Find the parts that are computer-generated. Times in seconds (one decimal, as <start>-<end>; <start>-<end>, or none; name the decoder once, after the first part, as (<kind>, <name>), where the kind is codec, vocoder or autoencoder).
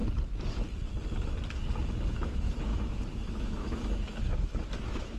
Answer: 2.1-5.2 (autoencoder, DAC-VAE)